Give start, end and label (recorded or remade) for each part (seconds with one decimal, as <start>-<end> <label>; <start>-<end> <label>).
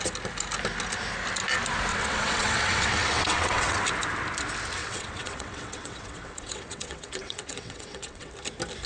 0.0-1.9 recorded; 1.9-3.8 remade; 3.8-4.8 recorded; 4.8-8.3 remade; 8.3-8.9 recorded